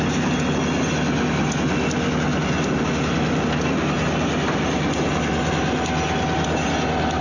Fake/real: real